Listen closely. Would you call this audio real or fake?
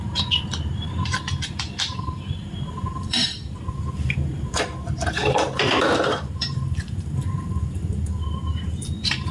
fake